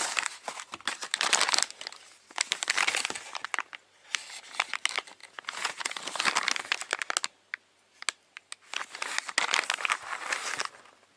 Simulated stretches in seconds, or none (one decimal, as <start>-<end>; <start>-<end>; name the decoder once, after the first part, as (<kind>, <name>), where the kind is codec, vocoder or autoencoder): 5.2-6.0 (vocoder, Vocos)